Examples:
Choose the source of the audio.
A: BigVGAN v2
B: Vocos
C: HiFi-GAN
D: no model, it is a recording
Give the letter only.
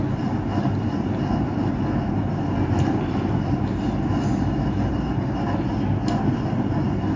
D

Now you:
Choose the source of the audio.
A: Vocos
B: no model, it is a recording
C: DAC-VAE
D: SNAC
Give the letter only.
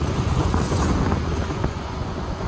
A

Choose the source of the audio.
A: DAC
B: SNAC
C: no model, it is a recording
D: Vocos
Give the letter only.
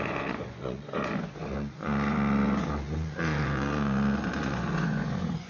D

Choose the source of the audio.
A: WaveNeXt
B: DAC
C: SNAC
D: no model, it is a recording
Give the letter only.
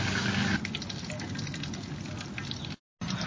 D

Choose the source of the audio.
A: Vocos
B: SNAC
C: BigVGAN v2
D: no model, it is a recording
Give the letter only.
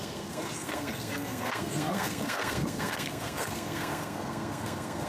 B